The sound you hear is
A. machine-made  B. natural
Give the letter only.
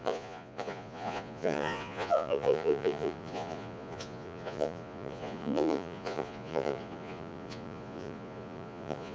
A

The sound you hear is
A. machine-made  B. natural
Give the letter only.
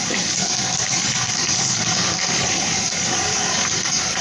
A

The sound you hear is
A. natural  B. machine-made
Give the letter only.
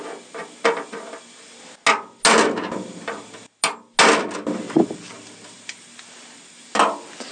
A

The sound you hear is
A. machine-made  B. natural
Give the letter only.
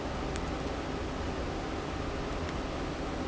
B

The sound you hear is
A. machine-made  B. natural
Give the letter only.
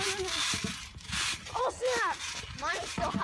B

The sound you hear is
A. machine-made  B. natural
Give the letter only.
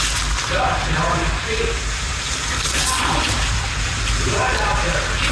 B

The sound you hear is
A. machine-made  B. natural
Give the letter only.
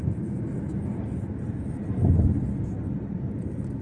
B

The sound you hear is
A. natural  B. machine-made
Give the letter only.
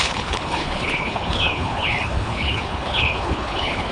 B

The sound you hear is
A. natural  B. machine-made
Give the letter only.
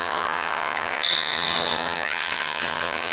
B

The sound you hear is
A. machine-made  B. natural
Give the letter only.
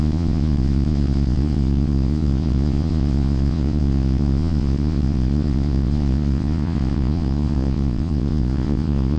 A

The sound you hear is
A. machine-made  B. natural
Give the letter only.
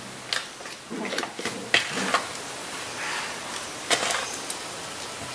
B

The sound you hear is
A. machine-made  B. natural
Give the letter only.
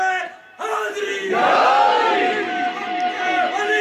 B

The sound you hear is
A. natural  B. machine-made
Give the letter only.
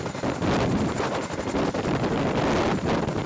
A